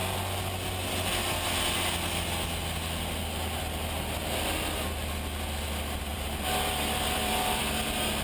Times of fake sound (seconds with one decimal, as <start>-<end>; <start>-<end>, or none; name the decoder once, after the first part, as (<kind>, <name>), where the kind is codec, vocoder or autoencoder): 6.1-7.6 (vocoder, BigVGAN v2)